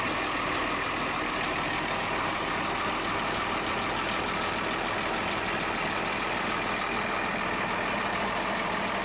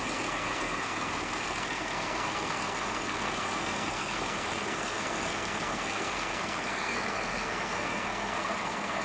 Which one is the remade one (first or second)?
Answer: second